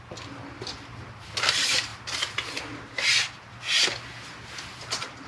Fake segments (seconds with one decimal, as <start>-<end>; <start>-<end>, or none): none